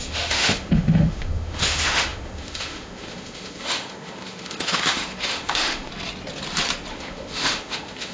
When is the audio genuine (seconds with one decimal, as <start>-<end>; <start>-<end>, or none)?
5.9-6.9